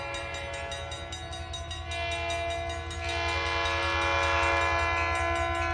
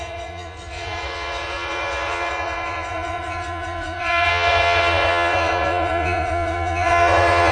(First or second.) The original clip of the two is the first